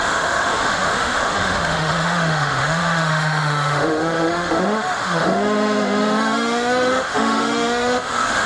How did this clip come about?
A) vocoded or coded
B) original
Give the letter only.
A